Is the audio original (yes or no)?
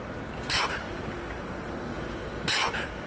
no